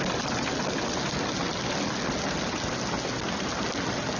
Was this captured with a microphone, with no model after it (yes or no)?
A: yes